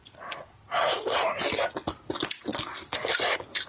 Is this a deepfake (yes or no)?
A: no